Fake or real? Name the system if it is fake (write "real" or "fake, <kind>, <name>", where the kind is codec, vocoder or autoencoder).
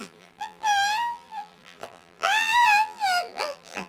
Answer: fake, vocoder, BigVGAN v2